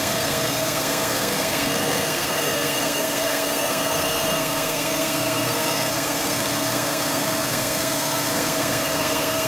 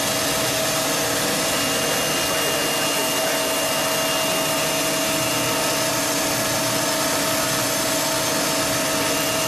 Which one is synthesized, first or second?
first